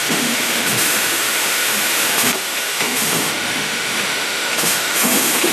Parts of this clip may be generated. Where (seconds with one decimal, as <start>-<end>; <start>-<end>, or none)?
0.0-5.5